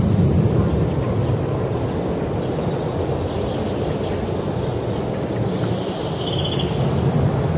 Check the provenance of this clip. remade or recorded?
recorded